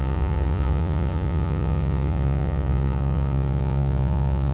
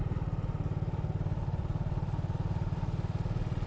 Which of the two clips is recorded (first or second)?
second